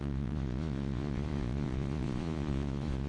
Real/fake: fake